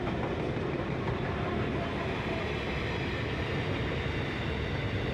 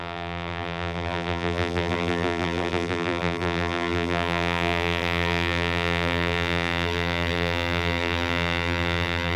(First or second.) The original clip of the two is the first